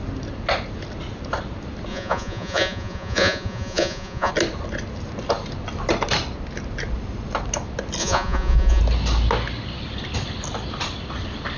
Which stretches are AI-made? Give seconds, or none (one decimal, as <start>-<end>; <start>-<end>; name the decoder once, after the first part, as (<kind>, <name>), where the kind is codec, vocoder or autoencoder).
1.9-4.3 (vocoder, Vocos); 8.0-8.8